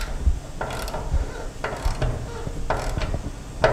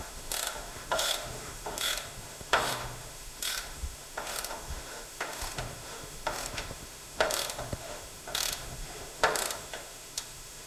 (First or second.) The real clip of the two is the first